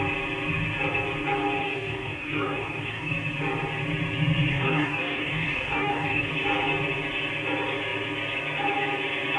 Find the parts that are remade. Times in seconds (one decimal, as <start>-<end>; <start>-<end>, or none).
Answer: 1.6-3.1; 4.5-6.3